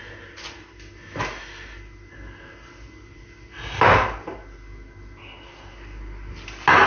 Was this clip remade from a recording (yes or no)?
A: no